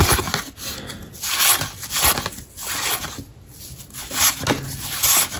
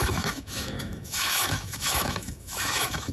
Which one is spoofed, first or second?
second